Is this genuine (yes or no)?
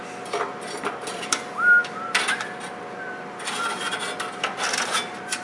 yes